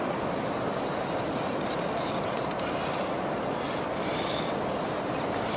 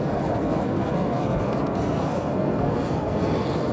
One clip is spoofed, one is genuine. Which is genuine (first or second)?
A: first